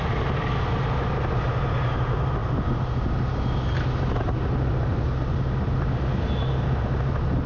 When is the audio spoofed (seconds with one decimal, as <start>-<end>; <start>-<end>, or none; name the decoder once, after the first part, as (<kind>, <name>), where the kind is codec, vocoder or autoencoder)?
none